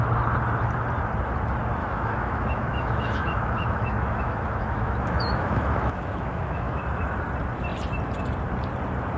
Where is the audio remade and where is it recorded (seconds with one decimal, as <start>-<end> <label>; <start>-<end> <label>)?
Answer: 0.0-1.8 recorded; 1.8-6.8 remade; 6.8-9.2 recorded